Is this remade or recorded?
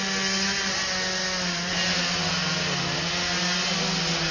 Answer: recorded